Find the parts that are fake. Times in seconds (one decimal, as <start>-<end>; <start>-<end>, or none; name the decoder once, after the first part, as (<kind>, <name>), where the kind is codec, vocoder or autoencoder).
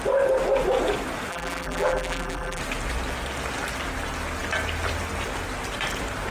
1.3-2.6 (vocoder, BigVGAN v2)